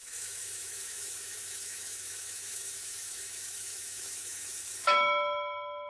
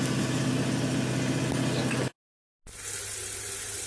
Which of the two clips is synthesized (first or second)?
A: first